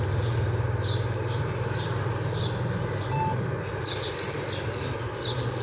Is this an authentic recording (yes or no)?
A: yes